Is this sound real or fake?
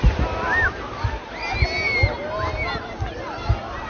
real